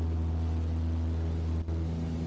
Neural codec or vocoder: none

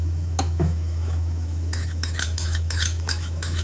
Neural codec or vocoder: autoencoder, DAC-VAE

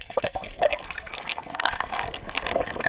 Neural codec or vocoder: codec, SNAC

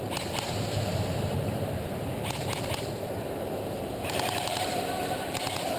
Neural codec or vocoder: vocoder, BigVGAN v2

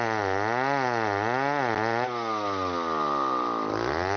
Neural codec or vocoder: none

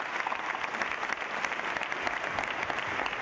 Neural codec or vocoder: none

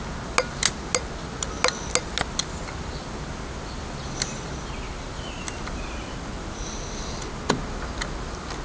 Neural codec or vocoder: none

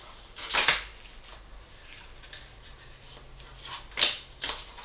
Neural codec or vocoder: none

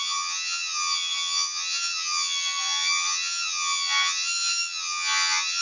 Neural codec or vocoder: vocoder, HiFi-GAN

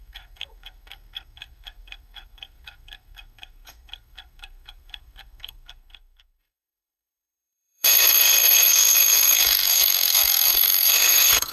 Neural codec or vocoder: codec, SNAC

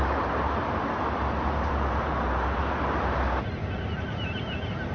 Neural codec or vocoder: vocoder, BigVGAN v2